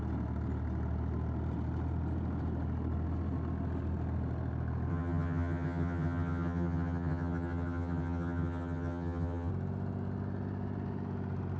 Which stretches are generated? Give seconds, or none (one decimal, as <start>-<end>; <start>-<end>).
4.9-9.5